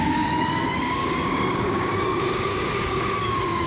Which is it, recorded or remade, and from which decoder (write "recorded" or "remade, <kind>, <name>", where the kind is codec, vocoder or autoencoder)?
remade, codec, DAC